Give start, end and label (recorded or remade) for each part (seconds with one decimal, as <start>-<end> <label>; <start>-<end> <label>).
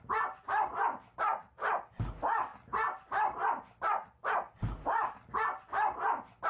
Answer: 0.0-6.5 recorded